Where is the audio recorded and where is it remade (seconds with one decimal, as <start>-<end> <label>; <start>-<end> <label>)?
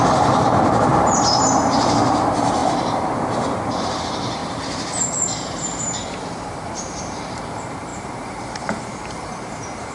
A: 0.0-9.9 remade